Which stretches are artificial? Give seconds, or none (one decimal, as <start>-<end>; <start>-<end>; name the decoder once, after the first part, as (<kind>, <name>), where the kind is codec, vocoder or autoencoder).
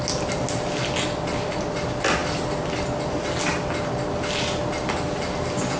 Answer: none